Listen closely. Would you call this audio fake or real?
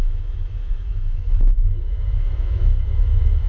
fake